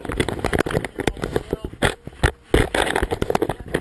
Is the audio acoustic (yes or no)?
yes